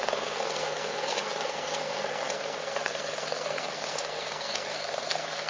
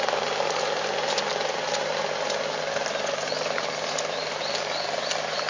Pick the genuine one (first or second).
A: second